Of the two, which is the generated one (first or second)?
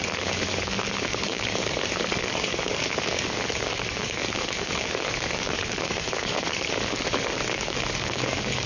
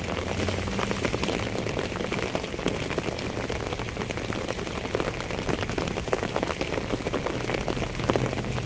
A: first